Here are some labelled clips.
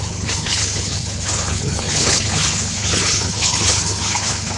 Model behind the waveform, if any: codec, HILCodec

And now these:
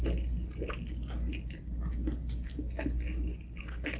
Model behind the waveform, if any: none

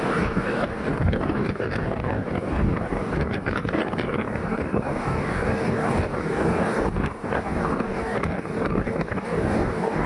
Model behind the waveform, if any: codec, DAC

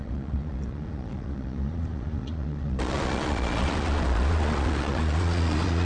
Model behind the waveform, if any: vocoder, Vocos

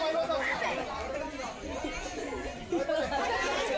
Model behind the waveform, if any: none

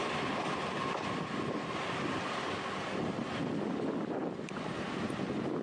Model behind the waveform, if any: none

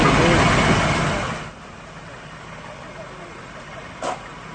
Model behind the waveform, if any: none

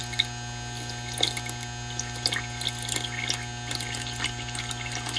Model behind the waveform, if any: none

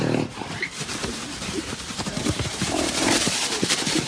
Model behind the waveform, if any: vocoder, BigVGAN v2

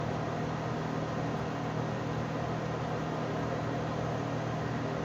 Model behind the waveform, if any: none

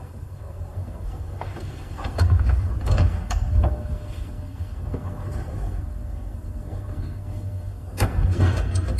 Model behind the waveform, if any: codec, SNAC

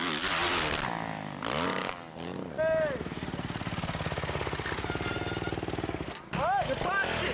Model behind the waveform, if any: none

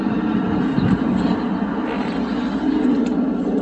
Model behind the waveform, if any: none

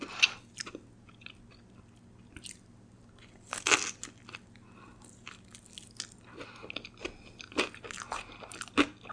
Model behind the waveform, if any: none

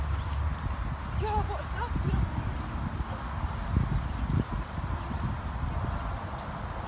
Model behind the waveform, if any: none